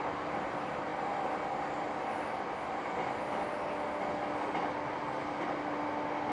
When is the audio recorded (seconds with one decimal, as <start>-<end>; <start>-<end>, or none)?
0.0-6.3